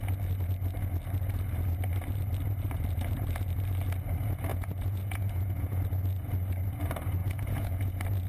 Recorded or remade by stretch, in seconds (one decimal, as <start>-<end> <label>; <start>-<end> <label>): 0.0-4.5 recorded; 4.5-5.8 remade; 5.8-7.2 recorded; 7.2-7.9 remade; 7.9-8.3 recorded